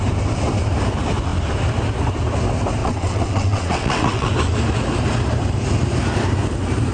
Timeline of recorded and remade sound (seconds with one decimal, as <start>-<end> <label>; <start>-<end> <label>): 0.0-2.8 recorded; 2.8-4.3 remade; 4.3-6.9 recorded